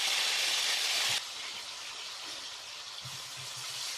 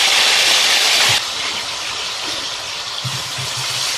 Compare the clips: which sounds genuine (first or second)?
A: first